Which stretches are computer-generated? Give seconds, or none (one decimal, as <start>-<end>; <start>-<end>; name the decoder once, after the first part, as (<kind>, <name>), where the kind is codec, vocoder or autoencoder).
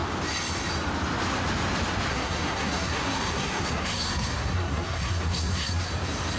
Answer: 2.1-5.9 (codec, SNAC)